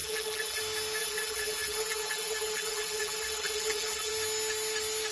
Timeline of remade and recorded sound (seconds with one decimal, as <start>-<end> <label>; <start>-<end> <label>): 0.0-0.6 remade; 0.6-1.0 recorded; 1.0-4.1 remade; 4.1-5.1 recorded